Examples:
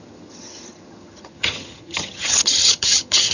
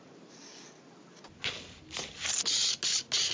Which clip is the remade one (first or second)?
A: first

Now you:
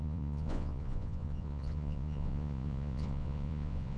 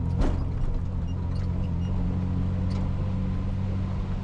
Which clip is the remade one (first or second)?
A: first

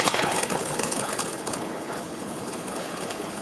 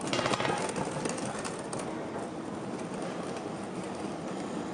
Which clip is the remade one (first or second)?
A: first